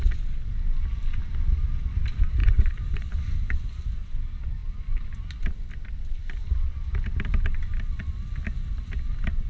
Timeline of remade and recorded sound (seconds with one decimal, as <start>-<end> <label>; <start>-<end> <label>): 0.0-2.4 recorded; 2.4-3.1 remade; 3.1-9.5 recorded